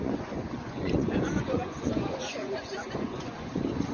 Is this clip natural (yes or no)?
no